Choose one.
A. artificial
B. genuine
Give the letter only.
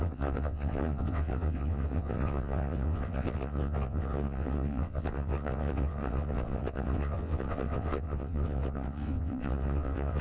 A